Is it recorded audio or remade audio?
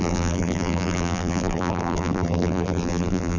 remade